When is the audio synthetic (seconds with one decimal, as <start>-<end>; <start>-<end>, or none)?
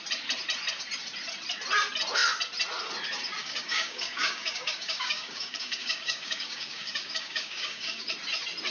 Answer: 3.4-8.1